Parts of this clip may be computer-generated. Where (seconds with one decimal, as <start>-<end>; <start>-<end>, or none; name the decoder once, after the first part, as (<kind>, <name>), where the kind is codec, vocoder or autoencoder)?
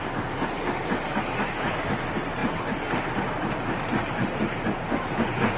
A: none